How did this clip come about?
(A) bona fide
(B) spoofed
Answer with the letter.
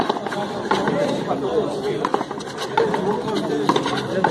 A